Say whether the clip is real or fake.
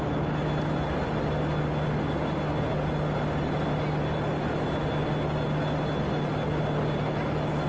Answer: real